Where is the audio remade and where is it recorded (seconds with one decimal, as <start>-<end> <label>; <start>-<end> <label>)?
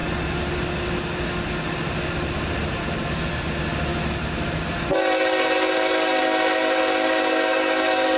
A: 0.0-8.2 recorded